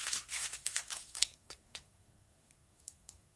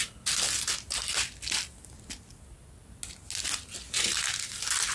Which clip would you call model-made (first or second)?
first